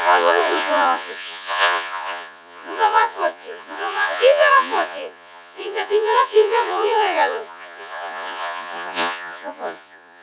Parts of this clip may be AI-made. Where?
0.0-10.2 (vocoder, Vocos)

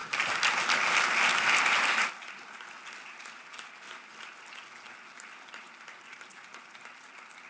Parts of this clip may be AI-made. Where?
none

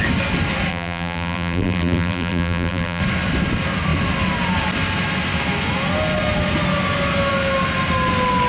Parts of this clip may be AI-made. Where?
0.7-3.0 (vocoder, BigVGAN v2)

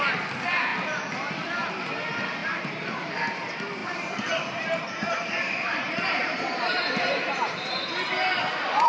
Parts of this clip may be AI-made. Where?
2.4-3.1 (vocoder, BigVGAN v2); 3.8-8.4

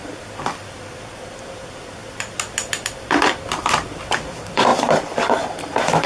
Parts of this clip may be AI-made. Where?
0.0-2.0 (vocoder, BigVGAN v2); 2.7-6.1

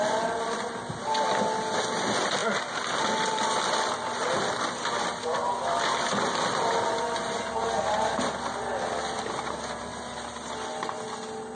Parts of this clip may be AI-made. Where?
2.4-5.8 (vocoder, BigVGAN v2)

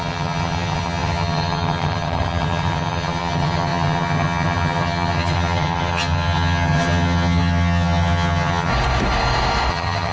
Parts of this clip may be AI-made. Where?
0.0-8.7 (vocoder, HiFi-GAN); 9.7-10.1